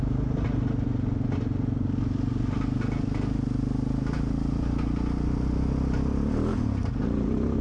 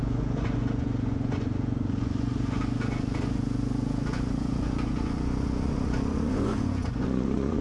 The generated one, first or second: second